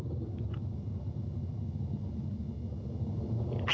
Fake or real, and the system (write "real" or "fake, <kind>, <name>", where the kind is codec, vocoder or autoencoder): real